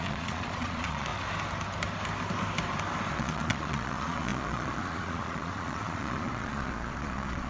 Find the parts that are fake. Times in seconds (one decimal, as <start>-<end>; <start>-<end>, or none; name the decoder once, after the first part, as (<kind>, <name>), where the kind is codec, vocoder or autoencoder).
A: 0.0-1.1 (vocoder, Vocos); 3.1-7.5